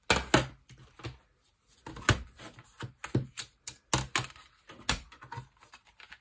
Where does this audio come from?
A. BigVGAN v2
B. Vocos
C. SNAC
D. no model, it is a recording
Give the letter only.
D